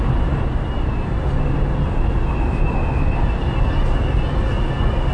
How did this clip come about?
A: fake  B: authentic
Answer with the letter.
B